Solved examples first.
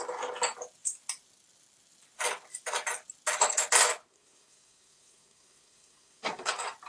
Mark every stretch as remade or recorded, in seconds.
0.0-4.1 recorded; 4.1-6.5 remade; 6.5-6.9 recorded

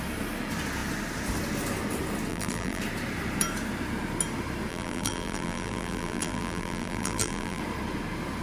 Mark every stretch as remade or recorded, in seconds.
0.0-2.3 recorded; 2.3-2.8 remade; 2.8-4.7 recorded; 4.7-7.6 remade; 7.6-8.4 recorded

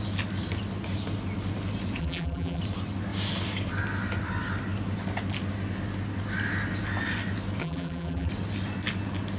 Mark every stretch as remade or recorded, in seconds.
0.0-2.0 recorded; 2.0-2.6 remade; 2.6-7.6 recorded; 7.6-8.3 remade; 8.3-9.4 recorded